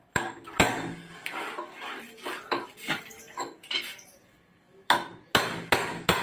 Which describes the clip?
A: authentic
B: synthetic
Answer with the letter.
B